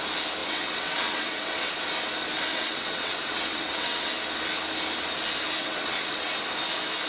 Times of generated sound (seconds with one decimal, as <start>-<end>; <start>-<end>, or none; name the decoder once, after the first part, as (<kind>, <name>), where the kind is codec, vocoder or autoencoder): 0.4-1.7 (vocoder, WaveNeXt); 2.5-4.1; 5.6-6.3